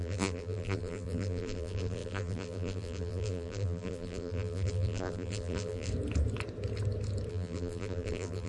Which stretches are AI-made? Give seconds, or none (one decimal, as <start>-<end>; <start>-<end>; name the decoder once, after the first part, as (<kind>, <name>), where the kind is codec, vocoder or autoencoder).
0.0-5.9 (vocoder, BigVGAN v2); 7.3-8.5